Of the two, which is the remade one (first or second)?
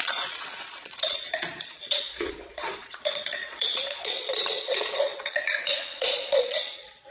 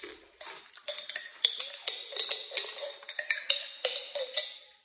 first